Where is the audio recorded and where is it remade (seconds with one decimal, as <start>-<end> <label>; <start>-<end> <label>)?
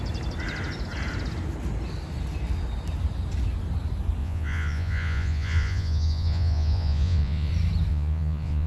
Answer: 0.0-4.2 recorded; 4.2-7.5 remade; 7.5-7.9 recorded; 7.9-8.7 remade